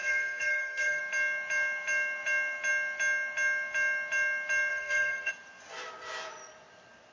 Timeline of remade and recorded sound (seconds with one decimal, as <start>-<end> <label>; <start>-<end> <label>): 0.0-1.0 remade; 1.0-4.7 recorded; 4.7-5.3 remade; 5.3-7.1 recorded